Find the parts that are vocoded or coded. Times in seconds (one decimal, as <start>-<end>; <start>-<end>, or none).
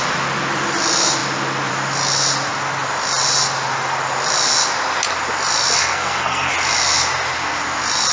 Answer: 5.8-6.5